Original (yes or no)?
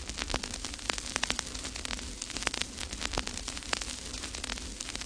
yes